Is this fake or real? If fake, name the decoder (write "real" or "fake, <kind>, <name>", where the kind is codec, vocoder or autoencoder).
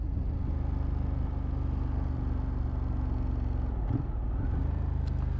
real